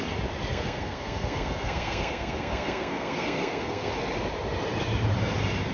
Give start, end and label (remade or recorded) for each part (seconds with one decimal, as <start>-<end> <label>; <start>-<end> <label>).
0.0-0.5 recorded; 0.5-3.9 remade; 3.9-5.7 recorded